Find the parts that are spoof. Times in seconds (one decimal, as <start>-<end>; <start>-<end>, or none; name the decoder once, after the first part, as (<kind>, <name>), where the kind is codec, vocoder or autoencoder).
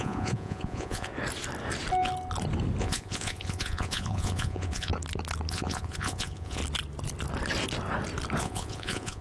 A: 0.0-1.1 (vocoder, Vocos); 2.8-4.9; 5.5-6.6; 8.4-9.2